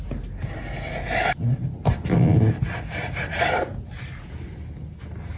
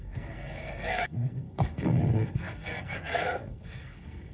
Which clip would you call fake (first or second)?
second